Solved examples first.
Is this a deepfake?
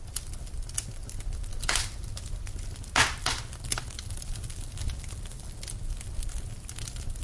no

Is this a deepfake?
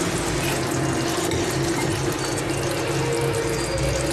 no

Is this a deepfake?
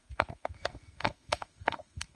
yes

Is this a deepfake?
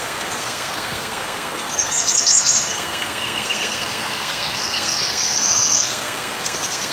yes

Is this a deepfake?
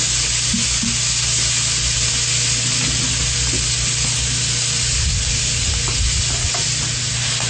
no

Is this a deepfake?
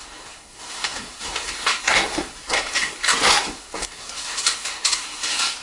yes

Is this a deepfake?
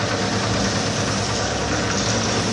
no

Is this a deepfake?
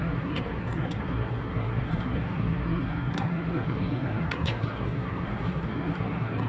yes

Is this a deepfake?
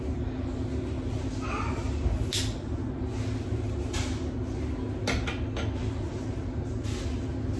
no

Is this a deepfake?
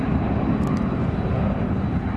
no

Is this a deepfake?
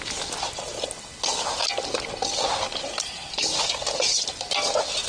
no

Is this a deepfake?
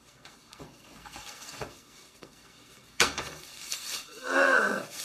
yes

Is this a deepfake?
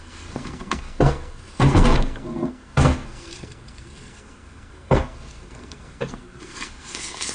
yes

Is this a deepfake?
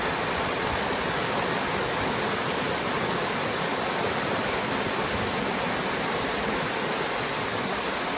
no